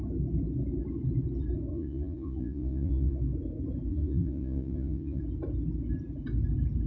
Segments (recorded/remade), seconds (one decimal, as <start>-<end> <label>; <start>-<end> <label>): 0.0-1.7 recorded; 1.7-3.2 remade; 3.2-3.9 recorded; 3.9-5.2 remade; 5.2-6.9 recorded

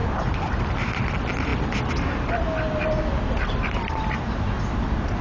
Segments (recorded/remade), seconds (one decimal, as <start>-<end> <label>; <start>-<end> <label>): 0.0-5.2 recorded

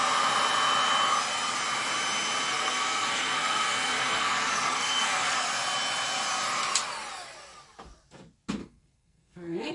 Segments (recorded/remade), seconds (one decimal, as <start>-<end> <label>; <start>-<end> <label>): 0.0-2.5 recorded; 2.5-5.4 remade; 5.4-8.6 recorded; 8.6-9.7 remade

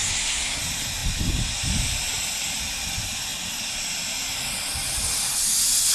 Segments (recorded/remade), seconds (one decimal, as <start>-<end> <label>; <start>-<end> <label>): 0.0-0.6 remade; 0.6-5.9 recorded